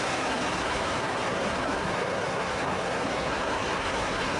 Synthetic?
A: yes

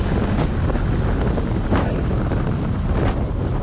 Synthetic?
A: no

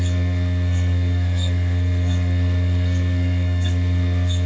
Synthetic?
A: yes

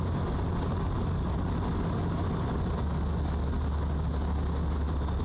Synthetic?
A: no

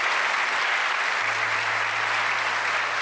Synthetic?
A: no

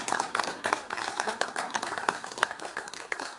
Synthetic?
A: yes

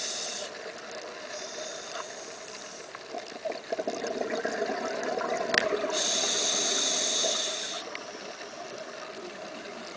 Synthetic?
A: no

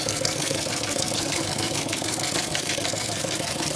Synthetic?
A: yes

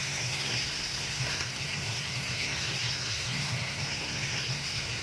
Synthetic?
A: yes